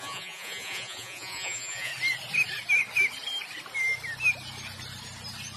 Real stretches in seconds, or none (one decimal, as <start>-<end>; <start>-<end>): 1.9-5.6